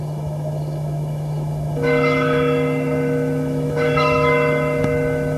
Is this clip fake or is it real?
fake